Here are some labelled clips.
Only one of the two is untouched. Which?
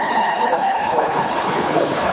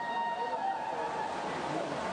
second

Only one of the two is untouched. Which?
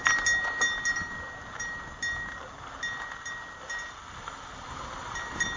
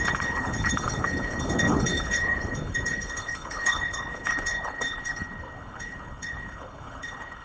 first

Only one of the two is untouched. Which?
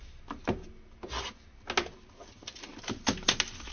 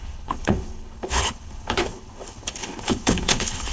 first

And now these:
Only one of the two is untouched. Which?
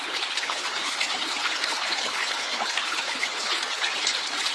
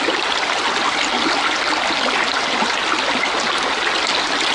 second